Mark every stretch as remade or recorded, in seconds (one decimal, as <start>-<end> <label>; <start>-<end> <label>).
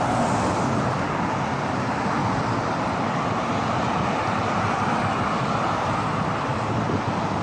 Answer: 0.0-7.4 recorded